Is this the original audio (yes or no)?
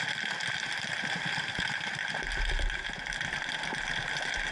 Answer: yes